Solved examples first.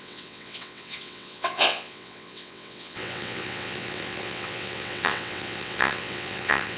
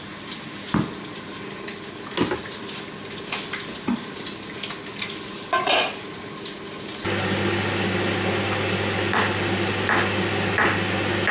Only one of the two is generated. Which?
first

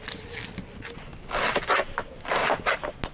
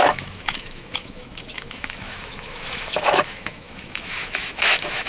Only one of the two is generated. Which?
second